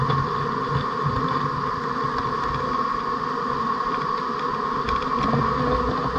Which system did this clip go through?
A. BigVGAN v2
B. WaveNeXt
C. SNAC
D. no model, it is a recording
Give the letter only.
D